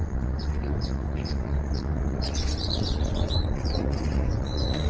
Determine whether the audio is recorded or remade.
remade